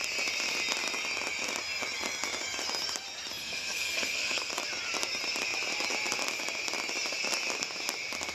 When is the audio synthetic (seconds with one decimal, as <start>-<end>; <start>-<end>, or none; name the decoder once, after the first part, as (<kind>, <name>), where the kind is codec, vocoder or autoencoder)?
3.4-4.5 (codec, SNAC)